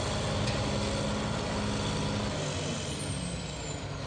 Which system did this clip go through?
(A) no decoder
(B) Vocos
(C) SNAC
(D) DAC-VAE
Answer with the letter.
A